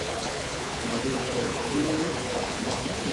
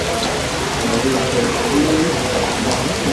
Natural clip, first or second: second